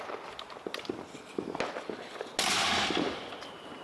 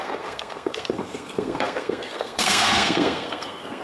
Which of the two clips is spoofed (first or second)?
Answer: second